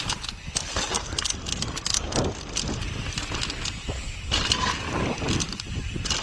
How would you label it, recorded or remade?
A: recorded